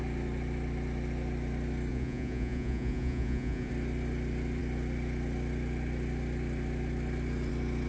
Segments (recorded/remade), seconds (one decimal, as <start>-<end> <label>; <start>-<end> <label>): 0.0-1.9 recorded; 1.9-3.7 remade; 3.7-7.9 recorded